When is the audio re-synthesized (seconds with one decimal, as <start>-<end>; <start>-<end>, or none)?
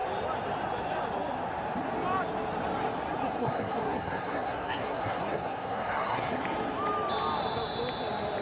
3.4-6.4